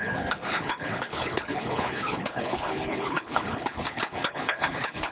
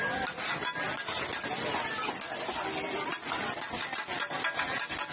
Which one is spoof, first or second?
first